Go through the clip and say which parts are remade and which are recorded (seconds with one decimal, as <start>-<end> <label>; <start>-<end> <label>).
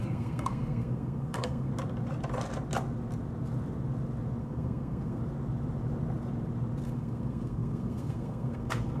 0.0-1.7 remade; 1.7-4.4 recorded; 4.4-5.2 remade; 5.2-6.8 recorded; 6.8-9.0 remade